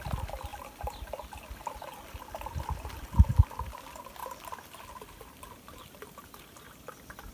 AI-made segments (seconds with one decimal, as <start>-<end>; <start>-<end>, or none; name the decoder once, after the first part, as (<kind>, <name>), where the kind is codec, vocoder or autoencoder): 4.2-6.1 (vocoder, BigVGAN v2)